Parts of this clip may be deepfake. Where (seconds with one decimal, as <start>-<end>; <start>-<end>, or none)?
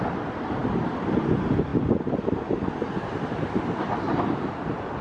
none